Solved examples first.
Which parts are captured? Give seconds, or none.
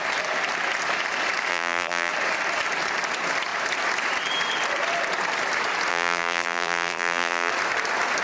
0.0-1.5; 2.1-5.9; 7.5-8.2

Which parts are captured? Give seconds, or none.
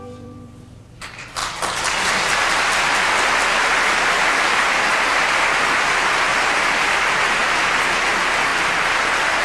7.4-8.1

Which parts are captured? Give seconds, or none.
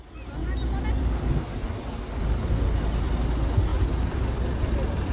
0.0-3.7; 4.2-5.1